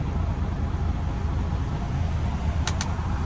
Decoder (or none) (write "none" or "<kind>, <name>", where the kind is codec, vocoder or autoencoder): none